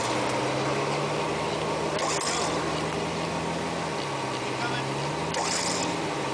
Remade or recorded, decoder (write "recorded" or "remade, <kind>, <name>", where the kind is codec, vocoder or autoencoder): recorded